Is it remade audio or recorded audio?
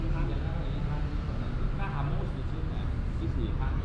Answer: recorded